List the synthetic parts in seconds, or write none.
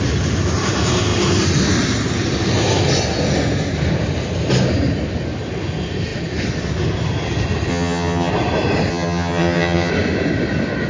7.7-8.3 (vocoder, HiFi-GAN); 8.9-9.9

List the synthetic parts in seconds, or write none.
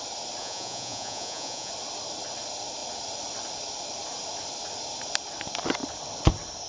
0.4-1.7 (vocoder, Vocos)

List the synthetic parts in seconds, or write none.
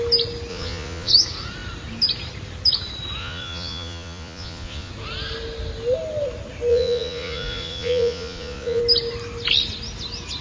0.5-1.1 (vocoder, Vocos); 3.2-4.9; 6.7-8.8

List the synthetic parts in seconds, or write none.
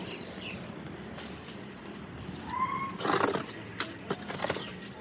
none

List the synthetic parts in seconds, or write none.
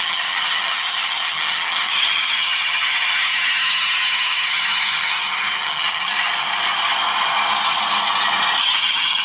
0.0-6.3 (vocoder, HiFi-GAN); 8.6-9.2